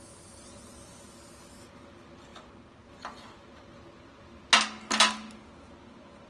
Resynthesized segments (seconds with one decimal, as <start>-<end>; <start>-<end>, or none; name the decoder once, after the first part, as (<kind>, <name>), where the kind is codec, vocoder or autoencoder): none